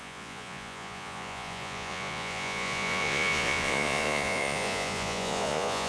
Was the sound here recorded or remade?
remade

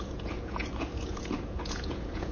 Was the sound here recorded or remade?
remade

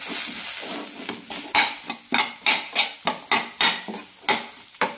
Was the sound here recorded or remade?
recorded